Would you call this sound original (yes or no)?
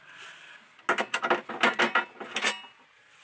yes